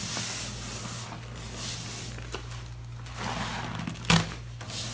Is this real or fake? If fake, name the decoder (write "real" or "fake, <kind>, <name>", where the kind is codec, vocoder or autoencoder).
real